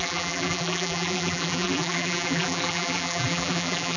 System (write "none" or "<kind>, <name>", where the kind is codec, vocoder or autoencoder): vocoder, BigVGAN v2